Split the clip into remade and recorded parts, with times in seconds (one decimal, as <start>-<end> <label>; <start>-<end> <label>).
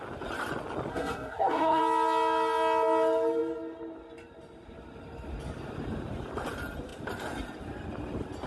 0.0-0.9 recorded; 0.9-1.8 remade; 1.8-8.5 recorded